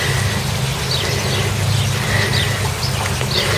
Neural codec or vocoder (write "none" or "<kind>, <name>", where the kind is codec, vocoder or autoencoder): none